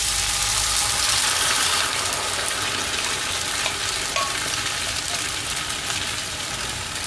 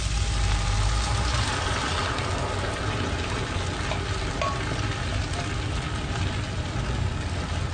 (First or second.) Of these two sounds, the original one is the second